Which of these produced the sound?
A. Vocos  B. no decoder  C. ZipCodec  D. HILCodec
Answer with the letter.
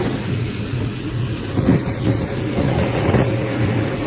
A